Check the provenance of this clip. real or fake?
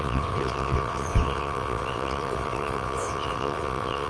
fake